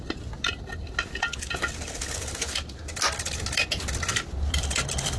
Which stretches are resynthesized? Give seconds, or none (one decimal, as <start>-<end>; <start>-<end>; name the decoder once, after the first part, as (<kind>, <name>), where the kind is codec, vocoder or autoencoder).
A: none